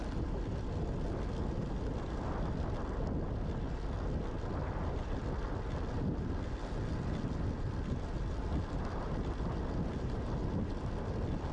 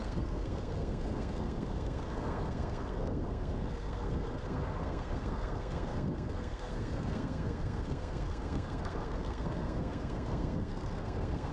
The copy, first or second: second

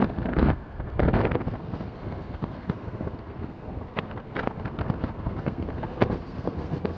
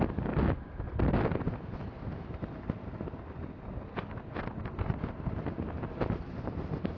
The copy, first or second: first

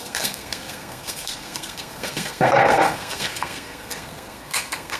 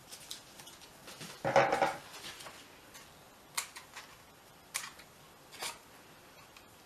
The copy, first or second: first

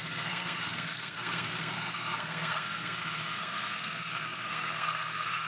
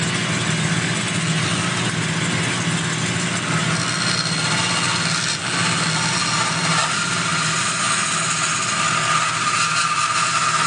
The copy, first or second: first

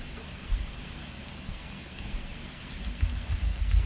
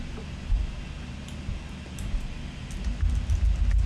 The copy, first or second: first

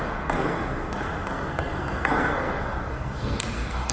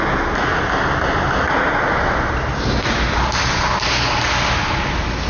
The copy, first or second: first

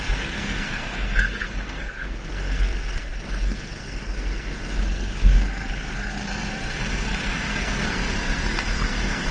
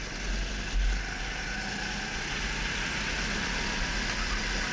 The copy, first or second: first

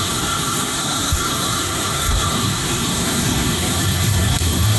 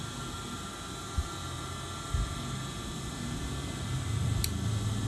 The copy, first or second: first